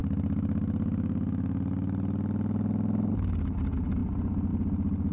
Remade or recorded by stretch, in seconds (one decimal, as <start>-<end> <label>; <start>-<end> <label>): 0.0-5.1 recorded